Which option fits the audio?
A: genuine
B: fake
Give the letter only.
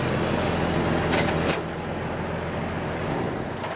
A